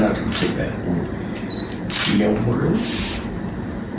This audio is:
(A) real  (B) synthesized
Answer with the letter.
B